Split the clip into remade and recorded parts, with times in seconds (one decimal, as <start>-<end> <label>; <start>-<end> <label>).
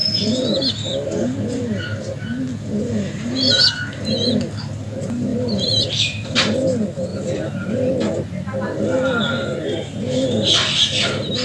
0.0-0.5 remade; 0.5-5.3 recorded; 5.3-6.4 remade; 6.4-7.1 recorded; 7.1-7.9 remade; 7.9-11.4 recorded